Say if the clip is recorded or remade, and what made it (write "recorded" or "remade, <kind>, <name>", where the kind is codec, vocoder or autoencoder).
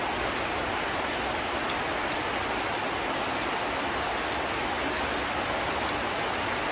recorded